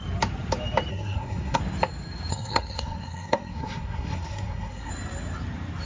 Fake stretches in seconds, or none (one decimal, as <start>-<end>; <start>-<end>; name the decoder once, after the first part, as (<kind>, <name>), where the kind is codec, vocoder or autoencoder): 0.9-1.6 (codec, SNAC); 2.3-4.9